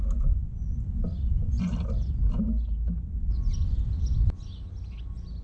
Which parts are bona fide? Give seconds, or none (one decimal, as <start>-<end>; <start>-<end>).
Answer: 0.0-1.0; 1.7-5.4